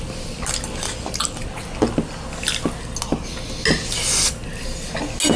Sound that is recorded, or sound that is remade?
recorded